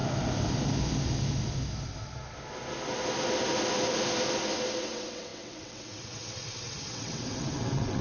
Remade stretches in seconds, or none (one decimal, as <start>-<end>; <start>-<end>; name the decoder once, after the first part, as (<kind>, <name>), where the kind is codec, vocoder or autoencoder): 4.8-8.0 (vocoder, WaveNeXt)

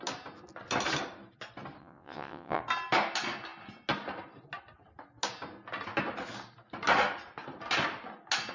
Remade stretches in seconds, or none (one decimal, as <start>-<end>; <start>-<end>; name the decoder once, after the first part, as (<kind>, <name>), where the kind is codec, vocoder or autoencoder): 1.8-2.6 (vocoder, WaveNeXt)

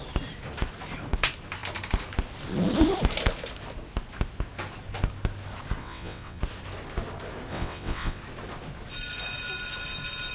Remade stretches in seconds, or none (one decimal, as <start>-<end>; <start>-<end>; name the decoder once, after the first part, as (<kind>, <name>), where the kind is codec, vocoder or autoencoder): 5.8-6.4 (vocoder, WaveNeXt); 7.5-8.2